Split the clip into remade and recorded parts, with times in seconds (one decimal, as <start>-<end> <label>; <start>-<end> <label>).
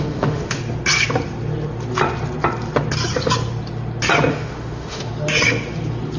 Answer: 0.0-0.6 remade; 0.6-4.3 recorded; 4.3-5.1 remade; 5.1-6.2 recorded